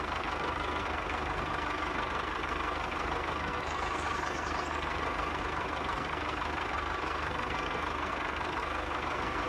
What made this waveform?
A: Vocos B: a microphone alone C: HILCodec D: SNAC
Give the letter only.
D